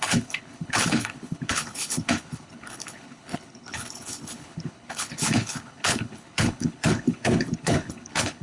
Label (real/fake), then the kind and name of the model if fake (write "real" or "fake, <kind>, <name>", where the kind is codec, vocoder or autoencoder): fake, codec, HILCodec